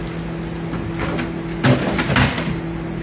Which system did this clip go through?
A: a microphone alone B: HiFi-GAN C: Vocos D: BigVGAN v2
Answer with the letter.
A